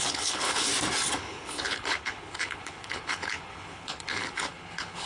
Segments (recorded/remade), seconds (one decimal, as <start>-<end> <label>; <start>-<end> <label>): 0.0-0.7 remade; 0.7-1.2 recorded; 1.2-5.1 remade

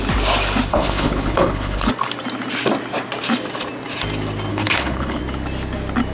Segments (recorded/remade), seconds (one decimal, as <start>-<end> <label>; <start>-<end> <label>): 0.0-0.7 recorded; 0.7-1.9 remade; 1.9-4.5 recorded; 4.5-5.2 remade; 5.2-6.1 recorded

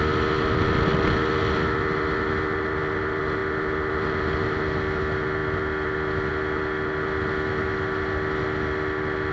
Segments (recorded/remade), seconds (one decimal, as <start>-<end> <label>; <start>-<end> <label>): 0.0-9.3 recorded

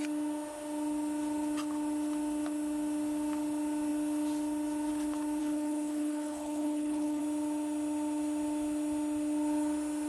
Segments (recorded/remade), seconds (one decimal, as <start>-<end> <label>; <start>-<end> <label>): 0.0-5.4 recorded; 5.4-7.2 remade; 7.2-10.1 recorded

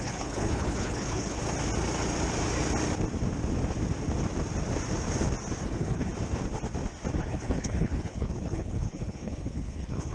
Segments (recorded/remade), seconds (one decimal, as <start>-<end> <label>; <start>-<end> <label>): 0.0-1.4 remade; 1.4-5.6 recorded; 5.6-6.1 remade; 6.1-7.2 recorded; 7.2-10.1 remade